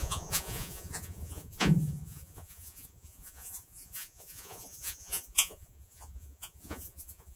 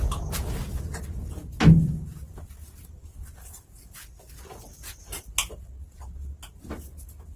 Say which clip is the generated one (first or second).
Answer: first